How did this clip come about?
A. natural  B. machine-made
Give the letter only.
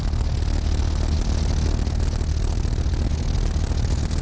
A